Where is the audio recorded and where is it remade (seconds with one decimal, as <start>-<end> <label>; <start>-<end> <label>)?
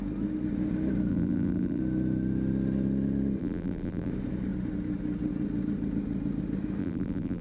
0.0-1.1 recorded; 1.1-1.8 remade; 1.8-3.4 recorded; 3.4-4.1 remade; 4.1-6.8 recorded; 6.8-7.4 remade